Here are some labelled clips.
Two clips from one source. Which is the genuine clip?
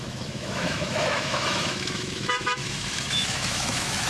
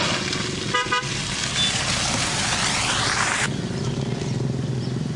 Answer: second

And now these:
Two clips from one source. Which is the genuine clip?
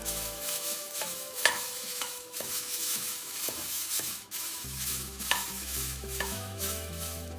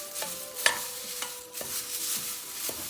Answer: second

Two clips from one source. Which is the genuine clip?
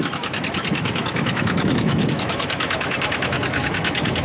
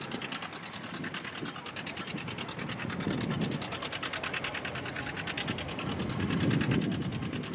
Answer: second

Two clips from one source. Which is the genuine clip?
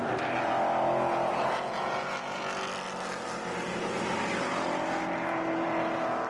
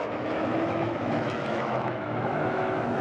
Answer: first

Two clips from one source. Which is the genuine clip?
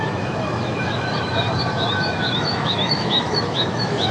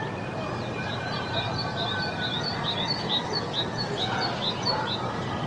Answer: second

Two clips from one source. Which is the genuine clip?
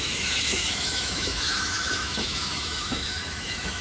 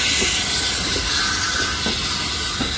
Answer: second